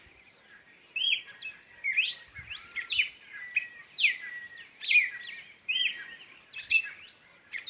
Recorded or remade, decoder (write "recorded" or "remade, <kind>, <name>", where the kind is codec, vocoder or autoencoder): recorded